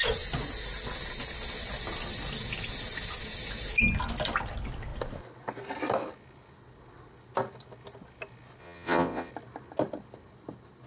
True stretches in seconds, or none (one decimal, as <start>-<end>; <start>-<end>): 0.0-8.6; 9.3-10.9